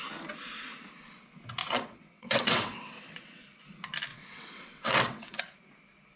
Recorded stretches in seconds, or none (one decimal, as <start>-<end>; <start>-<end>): 0.0-1.6; 3.4-4.1; 5.4-6.2